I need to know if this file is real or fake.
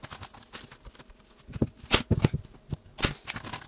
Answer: real